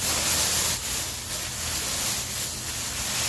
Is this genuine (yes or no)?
yes